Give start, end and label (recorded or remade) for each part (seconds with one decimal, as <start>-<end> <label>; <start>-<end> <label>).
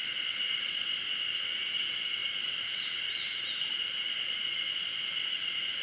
0.0-2.2 recorded; 2.2-5.8 remade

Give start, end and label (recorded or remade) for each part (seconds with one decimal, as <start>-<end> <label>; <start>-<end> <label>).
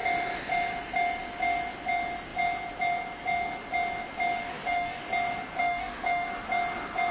0.0-4.4 recorded; 4.4-5.0 remade; 5.0-5.6 recorded; 5.6-6.3 remade; 6.3-7.1 recorded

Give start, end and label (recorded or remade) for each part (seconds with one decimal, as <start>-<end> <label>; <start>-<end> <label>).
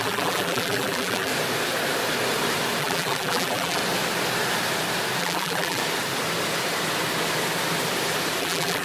0.0-1.3 remade; 1.3-2.8 recorded; 2.8-3.8 remade; 3.8-5.2 recorded; 5.2-5.8 remade; 5.8-8.4 recorded; 8.4-8.8 remade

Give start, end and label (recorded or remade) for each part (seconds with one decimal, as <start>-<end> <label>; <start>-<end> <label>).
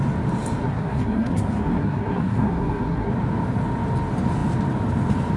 0.0-0.6 recorded; 0.6-3.1 remade; 3.1-5.4 recorded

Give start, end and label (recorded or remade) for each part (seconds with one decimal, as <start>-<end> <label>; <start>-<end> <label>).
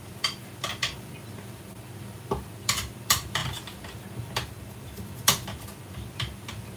0.0-6.8 remade